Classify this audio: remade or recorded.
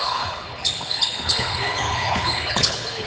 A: remade